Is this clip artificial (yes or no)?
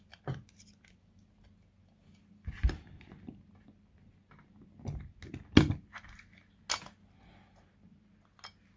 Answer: no